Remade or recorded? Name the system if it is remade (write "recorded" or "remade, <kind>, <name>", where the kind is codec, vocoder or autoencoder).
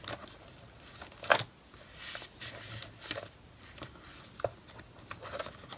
recorded